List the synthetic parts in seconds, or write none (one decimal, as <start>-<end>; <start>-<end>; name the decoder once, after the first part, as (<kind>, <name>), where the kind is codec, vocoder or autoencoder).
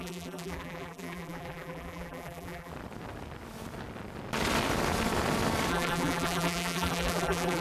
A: 0.0-2.7 (vocoder, BigVGAN v2); 5.7-7.6